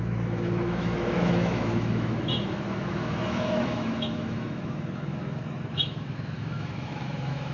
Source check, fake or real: fake